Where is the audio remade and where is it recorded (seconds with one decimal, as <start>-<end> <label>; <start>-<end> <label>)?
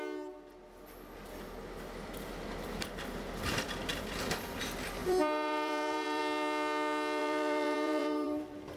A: 0.0-3.9 recorded; 3.9-4.6 remade; 4.6-5.0 recorded; 5.0-6.2 remade; 6.2-7.2 recorded; 7.2-8.8 remade